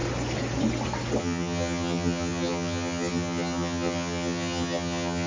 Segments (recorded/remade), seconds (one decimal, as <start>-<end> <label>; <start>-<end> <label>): 0.0-1.2 recorded; 1.2-5.3 remade